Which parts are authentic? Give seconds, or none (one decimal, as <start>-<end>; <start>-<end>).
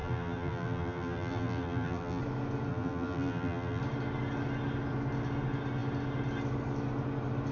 2.2-2.7; 3.8-7.5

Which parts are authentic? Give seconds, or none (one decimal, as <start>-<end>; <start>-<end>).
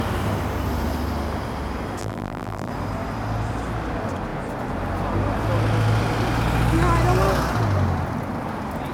0.0-2.0; 2.7-8.9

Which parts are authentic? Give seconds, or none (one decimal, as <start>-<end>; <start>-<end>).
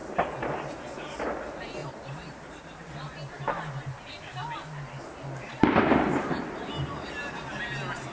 0.0-1.8; 2.8-8.1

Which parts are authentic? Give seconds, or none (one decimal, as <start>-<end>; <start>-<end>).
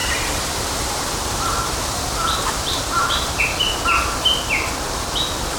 3.4-5.6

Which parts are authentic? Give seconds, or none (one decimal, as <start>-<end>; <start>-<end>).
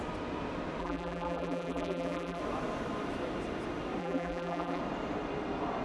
0.0-0.8; 2.4-4.0; 4.8-5.8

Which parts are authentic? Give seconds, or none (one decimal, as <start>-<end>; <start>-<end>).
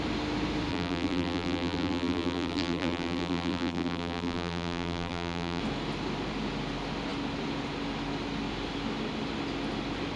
0.0-0.7; 5.6-10.2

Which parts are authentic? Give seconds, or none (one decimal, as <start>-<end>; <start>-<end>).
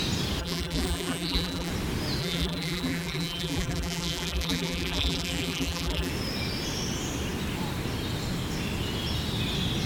0.0-0.4; 1.7-2.2; 6.1-9.9